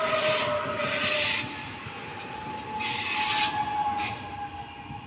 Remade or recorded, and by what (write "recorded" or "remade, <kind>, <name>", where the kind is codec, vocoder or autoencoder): recorded